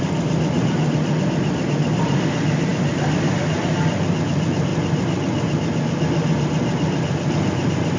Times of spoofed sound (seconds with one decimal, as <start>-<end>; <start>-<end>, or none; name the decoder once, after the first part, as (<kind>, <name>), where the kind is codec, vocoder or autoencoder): none